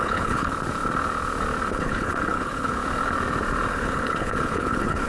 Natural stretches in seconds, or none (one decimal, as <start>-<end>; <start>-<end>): 0.5-1.7; 2.8-3.7